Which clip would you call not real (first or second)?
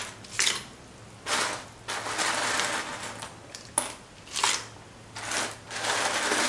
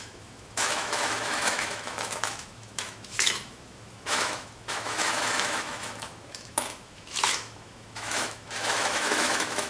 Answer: second